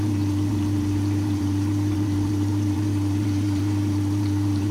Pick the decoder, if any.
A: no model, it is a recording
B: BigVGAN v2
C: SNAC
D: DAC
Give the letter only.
B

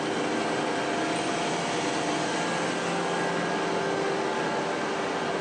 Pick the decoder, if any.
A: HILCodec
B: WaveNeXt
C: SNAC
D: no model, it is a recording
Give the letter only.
D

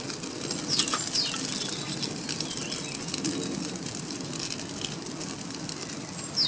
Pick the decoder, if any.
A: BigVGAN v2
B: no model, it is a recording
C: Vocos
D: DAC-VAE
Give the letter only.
B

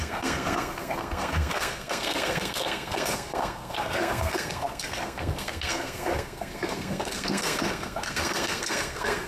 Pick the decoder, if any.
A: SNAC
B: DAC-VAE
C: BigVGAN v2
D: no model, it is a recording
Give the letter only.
A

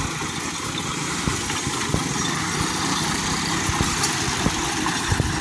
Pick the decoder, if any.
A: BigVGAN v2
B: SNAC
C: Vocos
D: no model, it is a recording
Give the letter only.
D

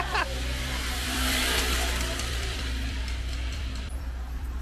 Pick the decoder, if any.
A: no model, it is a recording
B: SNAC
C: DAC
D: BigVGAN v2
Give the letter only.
D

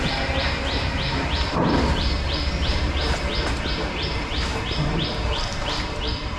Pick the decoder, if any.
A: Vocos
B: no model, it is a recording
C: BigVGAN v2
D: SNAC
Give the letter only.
C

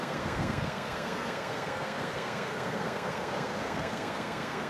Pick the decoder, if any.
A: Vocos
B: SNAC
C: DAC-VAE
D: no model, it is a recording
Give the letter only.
B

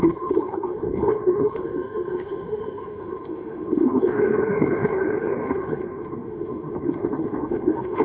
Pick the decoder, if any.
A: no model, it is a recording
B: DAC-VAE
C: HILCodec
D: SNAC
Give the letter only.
B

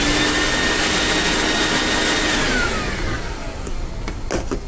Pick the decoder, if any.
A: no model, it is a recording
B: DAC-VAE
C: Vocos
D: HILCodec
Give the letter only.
A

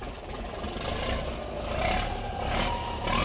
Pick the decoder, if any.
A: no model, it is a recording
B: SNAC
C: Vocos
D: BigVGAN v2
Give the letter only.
A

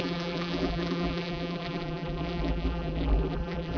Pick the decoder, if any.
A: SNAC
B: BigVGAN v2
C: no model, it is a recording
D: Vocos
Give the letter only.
B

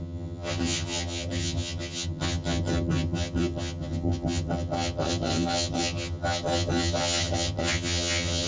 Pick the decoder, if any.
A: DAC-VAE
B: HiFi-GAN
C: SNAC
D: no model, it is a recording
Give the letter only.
B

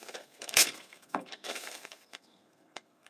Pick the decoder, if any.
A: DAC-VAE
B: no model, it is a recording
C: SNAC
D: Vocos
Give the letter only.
C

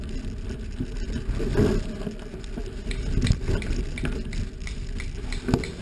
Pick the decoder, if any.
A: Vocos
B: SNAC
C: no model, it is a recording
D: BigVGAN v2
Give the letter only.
C